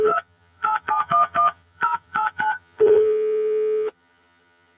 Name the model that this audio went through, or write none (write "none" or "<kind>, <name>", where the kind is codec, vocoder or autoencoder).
vocoder, HiFi-GAN